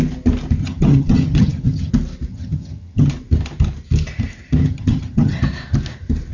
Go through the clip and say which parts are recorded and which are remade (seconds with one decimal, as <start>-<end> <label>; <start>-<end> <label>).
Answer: 0.0-0.6 recorded; 0.6-1.9 remade; 1.9-2.3 recorded; 2.3-3.1 remade; 3.1-4.6 recorded; 4.6-5.4 remade; 5.4-6.3 recorded

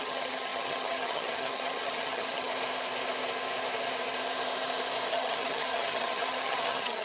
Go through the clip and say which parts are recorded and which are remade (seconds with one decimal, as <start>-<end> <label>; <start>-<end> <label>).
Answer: 0.0-2.5 remade; 2.5-5.1 recorded; 5.1-7.0 remade

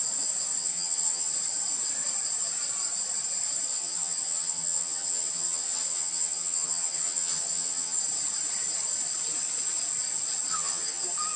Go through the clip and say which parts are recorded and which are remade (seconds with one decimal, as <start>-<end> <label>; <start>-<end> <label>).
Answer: 0.0-0.6 recorded; 0.6-1.3 remade; 1.3-3.7 recorded; 3.7-8.0 remade; 8.0-10.5 recorded; 10.5-11.0 remade; 11.0-11.4 recorded